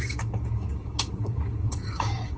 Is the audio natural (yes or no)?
no